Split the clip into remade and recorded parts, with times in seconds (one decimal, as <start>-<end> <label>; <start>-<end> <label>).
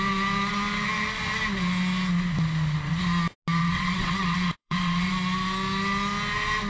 0.0-3.6 recorded; 3.6-5.1 remade; 5.1-6.7 recorded